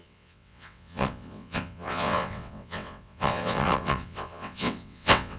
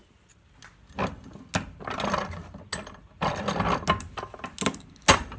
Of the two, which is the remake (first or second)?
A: first